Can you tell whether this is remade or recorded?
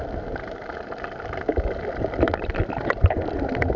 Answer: recorded